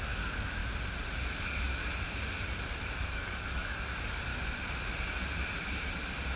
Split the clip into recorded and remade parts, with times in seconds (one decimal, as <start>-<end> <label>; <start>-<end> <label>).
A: 0.0-0.6 remade; 0.6-1.4 recorded; 1.4-1.8 remade; 1.8-3.0 recorded; 3.0-4.3 remade; 4.3-6.4 recorded